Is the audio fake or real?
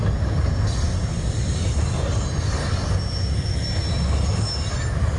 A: real